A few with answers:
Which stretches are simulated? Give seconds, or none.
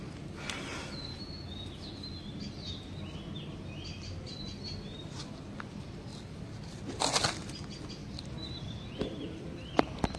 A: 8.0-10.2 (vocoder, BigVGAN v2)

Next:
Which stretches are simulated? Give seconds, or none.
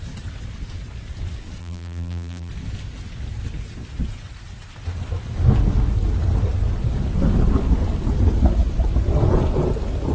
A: 1.6-2.5 (vocoder, BigVGAN v2)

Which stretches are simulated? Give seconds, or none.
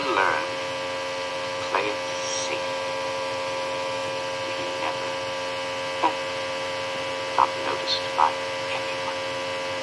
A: 1.3-4.0 (vocoder, BigVGAN v2); 6.5-8.7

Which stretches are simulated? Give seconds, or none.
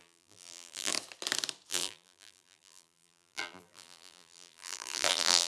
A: 0.0-0.9 (vocoder, BigVGAN v2); 1.7-5.5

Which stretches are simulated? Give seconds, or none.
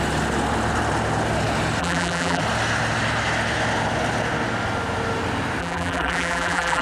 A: 1.8-2.4 (vocoder, BigVGAN v2); 5.6-6.8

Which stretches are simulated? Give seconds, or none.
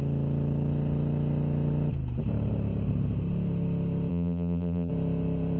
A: 4.1-4.9 (vocoder, BigVGAN v2)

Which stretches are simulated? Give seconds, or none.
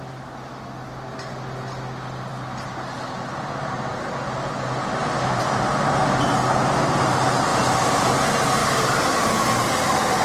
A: 4.8-5.6 (vocoder, BigVGAN v2); 8.6-9.3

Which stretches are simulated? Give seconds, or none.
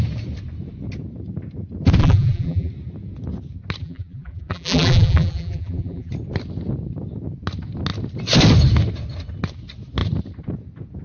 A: 2.0-2.7 (vocoder, BigVGAN v2); 3.8-6.1